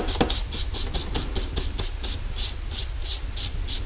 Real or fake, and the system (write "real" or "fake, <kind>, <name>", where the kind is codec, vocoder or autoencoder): real